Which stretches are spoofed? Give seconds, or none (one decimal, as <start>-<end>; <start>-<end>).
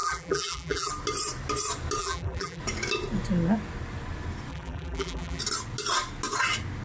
0.0-0.9; 2.0-2.6; 4.5-5.4